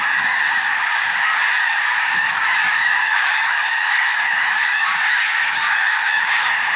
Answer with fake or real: fake